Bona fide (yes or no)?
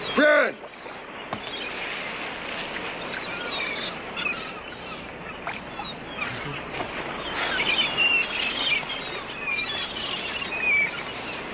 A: yes